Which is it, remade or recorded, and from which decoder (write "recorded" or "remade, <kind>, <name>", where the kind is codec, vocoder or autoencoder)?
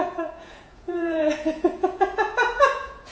remade, vocoder, Vocos